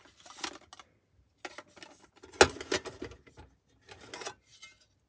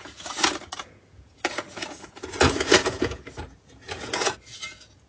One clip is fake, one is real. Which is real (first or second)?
first